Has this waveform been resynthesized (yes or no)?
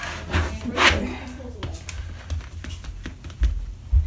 no